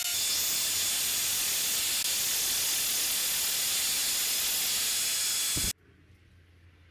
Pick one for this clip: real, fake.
real